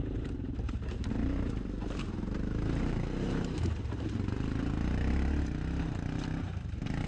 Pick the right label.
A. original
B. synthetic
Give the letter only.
B